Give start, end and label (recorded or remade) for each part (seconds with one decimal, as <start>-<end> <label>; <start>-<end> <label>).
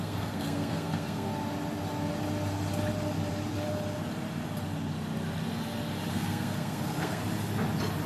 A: 0.0-1.3 remade; 1.3-6.1 recorded; 6.1-7.2 remade; 7.2-8.1 recorded